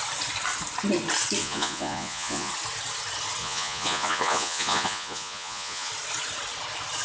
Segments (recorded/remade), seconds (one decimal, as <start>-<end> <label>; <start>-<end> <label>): 0.0-1.4 recorded; 1.4-2.5 remade; 2.5-3.4 recorded; 3.4-5.9 remade; 5.9-7.0 recorded